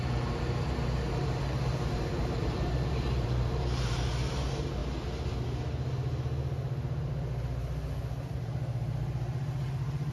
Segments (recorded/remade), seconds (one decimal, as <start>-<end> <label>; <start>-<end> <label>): 0.0-4.8 remade; 4.8-8.3 recorded; 8.3-10.1 remade